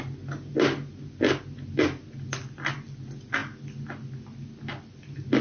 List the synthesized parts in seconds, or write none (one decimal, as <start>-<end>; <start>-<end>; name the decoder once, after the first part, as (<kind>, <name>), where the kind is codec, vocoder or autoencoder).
none